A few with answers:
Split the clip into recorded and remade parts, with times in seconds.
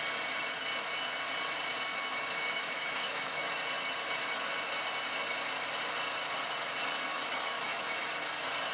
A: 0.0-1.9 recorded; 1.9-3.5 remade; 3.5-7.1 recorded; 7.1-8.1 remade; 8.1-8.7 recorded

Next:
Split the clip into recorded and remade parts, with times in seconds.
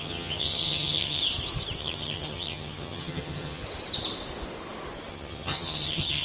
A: 0.0-1.2 remade; 1.2-1.8 recorded; 1.8-3.6 remade; 3.6-5.1 recorded; 5.1-6.2 remade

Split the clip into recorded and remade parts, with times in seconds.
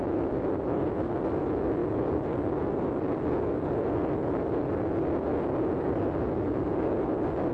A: 0.0-7.5 recorded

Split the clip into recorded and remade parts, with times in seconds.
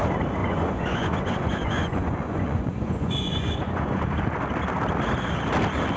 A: 0.0-0.4 recorded; 0.4-4.0 remade; 4.0-6.0 recorded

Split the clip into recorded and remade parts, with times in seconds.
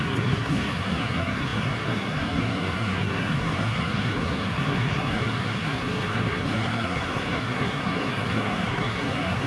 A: 0.0-9.5 remade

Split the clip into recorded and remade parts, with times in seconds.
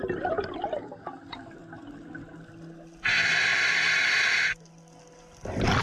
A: 0.0-5.8 recorded